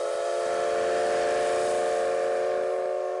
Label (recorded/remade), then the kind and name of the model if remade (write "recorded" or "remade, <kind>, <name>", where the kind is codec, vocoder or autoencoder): recorded